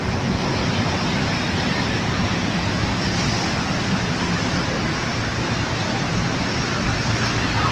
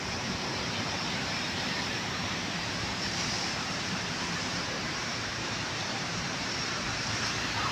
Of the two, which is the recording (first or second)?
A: first